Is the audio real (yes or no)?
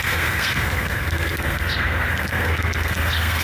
no